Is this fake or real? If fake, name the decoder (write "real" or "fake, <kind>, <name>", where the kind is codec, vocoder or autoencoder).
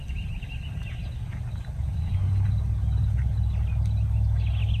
real